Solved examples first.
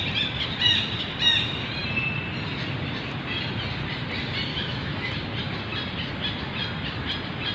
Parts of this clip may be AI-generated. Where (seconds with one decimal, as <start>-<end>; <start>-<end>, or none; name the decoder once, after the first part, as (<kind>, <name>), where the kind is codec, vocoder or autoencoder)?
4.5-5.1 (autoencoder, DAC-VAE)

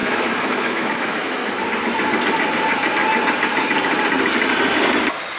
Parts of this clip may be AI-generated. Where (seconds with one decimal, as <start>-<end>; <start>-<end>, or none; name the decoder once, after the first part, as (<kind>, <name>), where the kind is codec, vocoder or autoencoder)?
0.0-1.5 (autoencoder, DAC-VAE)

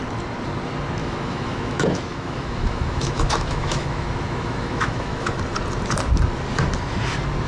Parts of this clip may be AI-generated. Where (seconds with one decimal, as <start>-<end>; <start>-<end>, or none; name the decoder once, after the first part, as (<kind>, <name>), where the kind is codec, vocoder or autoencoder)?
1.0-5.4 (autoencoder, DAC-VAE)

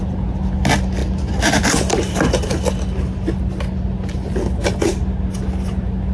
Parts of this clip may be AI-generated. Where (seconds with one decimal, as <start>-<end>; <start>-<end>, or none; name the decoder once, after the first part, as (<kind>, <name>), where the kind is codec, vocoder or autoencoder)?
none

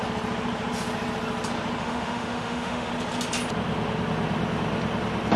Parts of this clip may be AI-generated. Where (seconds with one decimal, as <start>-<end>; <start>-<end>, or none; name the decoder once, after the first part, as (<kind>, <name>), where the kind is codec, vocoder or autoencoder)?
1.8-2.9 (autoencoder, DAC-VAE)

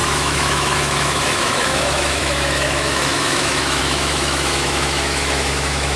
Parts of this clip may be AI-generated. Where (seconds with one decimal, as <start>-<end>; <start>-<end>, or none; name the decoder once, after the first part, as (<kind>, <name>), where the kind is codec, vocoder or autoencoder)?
0.0-6.0 (autoencoder, DAC-VAE)